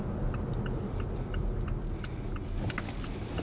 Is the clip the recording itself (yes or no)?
yes